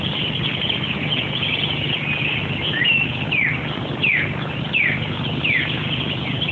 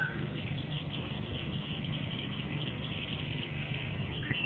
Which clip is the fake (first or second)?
second